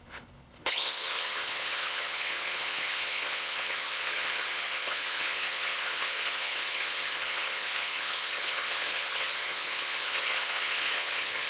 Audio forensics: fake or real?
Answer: fake